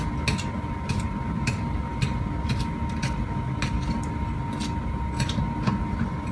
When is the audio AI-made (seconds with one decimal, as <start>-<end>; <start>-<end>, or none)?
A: none